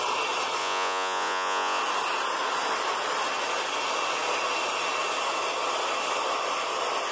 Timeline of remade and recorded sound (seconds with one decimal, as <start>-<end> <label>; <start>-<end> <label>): 0.0-0.6 recorded; 0.6-1.8 remade; 1.8-7.1 recorded